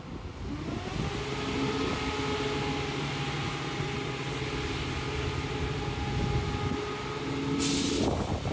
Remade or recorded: recorded